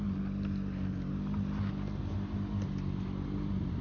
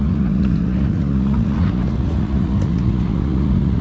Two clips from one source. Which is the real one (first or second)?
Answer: first